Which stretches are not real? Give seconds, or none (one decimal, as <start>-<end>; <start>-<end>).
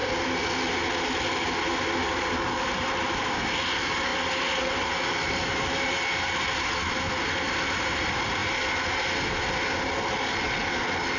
none